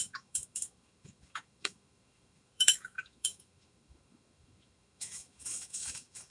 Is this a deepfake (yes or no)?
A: yes